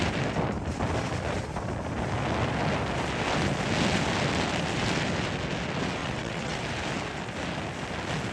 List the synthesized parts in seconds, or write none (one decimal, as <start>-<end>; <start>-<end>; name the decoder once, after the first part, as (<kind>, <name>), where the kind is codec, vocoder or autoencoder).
6.0-6.6 (vocoder, WaveNeXt)

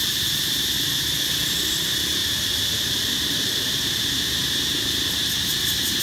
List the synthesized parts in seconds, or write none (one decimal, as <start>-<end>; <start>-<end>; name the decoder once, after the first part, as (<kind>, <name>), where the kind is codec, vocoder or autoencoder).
0.0-1.0 (vocoder, BigVGAN v2); 2.2-6.0

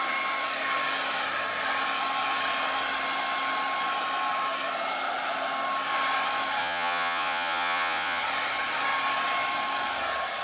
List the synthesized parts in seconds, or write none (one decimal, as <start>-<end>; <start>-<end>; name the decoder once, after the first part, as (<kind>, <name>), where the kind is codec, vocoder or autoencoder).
6.6-8.2 (vocoder, Vocos)

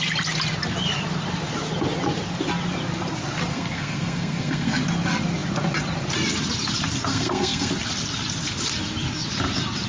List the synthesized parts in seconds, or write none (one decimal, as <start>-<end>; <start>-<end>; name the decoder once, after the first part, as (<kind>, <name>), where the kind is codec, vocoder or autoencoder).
3.5-4.8 (codec, SNAC); 7.1-7.7